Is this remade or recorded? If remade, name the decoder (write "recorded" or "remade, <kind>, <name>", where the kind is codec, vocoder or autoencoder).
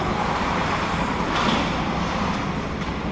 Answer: recorded